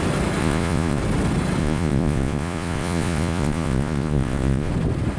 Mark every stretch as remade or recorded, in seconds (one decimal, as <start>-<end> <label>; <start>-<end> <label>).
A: 0.0-0.4 recorded; 0.4-1.0 remade; 1.0-1.6 recorded; 1.6-4.7 remade; 4.7-5.2 recorded